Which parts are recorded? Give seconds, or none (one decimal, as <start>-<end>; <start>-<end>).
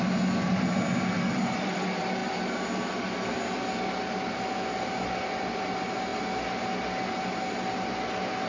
0.0-8.5